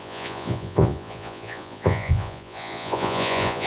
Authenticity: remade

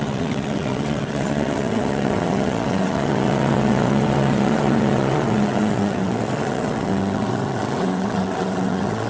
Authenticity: remade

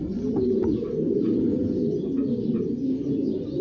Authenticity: recorded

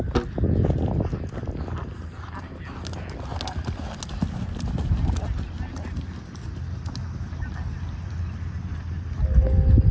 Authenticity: recorded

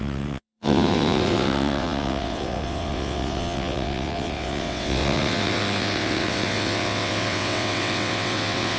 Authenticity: remade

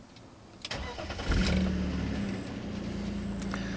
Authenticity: recorded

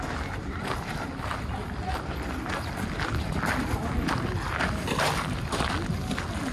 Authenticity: recorded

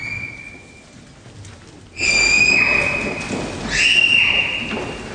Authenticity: recorded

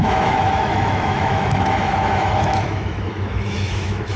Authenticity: remade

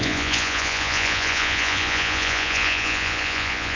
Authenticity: remade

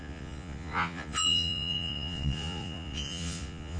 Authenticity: remade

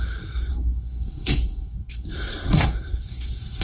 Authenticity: remade